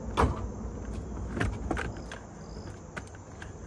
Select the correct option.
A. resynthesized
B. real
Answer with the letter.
B